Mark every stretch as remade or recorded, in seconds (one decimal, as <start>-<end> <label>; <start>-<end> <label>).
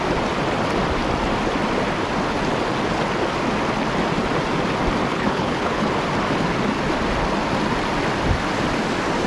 0.0-5.1 recorded; 5.1-5.9 remade; 5.9-9.3 recorded